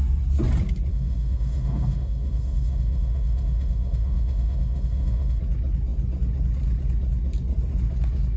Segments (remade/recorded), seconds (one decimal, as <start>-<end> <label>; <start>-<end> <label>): 0.0-0.9 recorded; 0.9-5.4 remade; 5.4-8.4 recorded